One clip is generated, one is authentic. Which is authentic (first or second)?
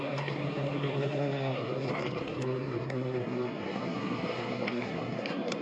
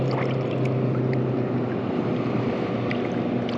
second